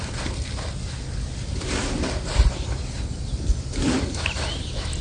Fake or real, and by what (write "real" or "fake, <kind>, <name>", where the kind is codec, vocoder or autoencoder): real